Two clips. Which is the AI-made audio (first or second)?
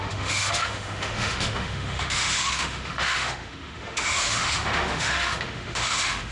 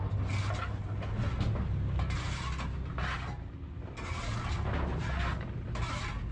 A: first